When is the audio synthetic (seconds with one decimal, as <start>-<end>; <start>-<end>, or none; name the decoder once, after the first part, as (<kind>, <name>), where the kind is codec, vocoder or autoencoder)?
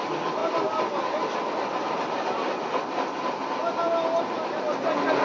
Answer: none